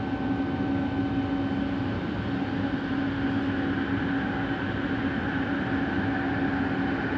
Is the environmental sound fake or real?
real